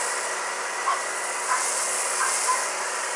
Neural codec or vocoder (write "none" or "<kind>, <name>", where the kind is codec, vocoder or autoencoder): none